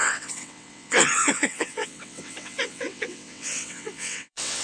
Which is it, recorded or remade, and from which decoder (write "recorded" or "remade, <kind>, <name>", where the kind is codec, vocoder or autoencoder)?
remade, vocoder, WaveNeXt